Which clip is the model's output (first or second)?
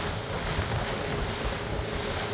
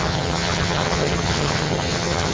second